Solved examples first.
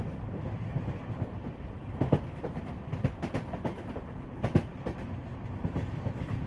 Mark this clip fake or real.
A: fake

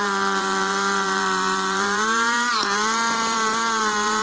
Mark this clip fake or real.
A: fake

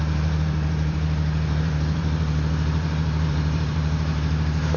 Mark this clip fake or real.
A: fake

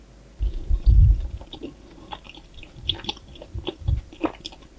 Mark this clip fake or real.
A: fake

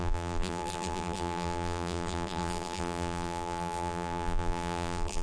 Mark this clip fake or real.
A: fake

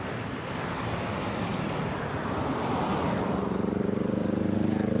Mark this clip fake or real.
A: fake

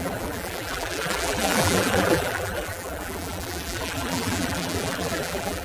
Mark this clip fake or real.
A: fake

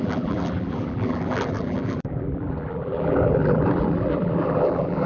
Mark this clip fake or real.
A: fake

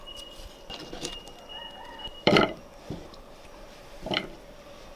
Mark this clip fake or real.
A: fake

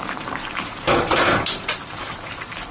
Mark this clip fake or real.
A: fake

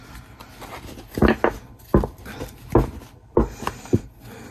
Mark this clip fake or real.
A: real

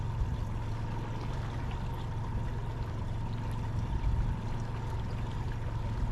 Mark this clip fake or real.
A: real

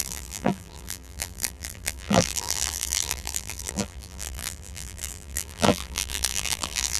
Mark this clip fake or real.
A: fake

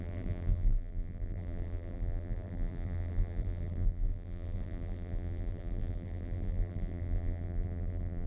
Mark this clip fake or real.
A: fake